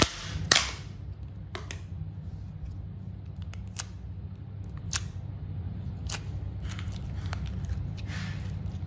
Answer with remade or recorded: recorded